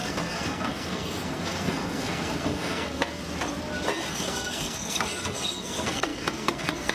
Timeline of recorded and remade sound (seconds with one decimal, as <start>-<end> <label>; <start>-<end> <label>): 0.0-3.2 remade; 3.2-4.1 recorded; 4.1-6.9 remade